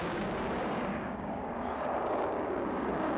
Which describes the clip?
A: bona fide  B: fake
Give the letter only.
B